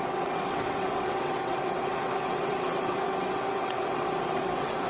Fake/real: fake